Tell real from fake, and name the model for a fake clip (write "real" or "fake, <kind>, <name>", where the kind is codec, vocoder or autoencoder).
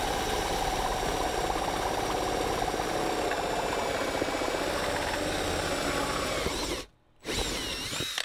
real